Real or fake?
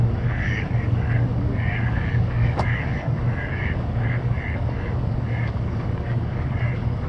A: fake